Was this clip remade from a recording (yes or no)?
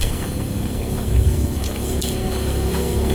yes